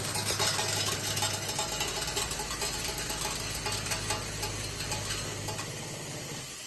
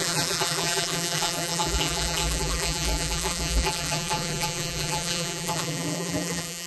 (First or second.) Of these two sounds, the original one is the first